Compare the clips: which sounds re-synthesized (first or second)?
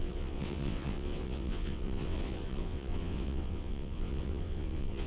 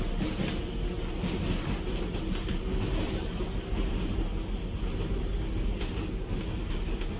first